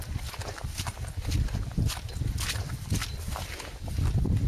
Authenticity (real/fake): fake